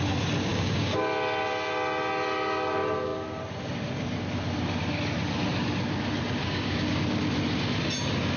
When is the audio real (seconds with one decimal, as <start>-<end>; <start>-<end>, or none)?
0.0-0.5; 1.0-6.4; 7.0-8.4

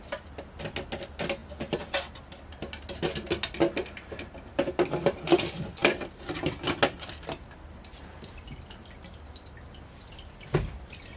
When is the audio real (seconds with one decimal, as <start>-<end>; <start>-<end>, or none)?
0.0-11.2

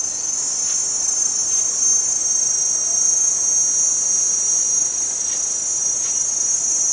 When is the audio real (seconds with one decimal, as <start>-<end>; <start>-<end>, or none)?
0.0-6.9

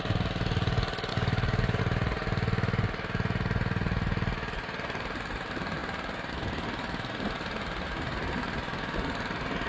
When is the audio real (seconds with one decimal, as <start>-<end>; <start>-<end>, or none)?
0.0-1.1; 1.8-9.7